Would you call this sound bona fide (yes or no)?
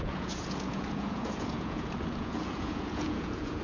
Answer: no